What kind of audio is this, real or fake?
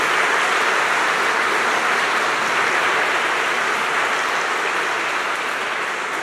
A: real